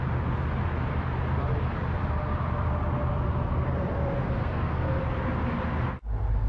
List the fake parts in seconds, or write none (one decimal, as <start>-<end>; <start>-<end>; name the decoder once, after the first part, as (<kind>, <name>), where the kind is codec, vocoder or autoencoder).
4.4-5.0 (codec, SNAC)